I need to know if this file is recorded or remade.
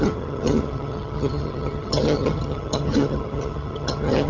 remade